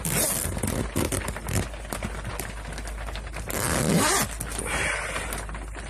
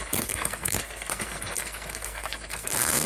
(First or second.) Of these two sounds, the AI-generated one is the second